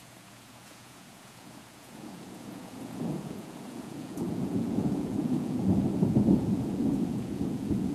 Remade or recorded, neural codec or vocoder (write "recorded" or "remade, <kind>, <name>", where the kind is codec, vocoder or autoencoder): remade, vocoder, Vocos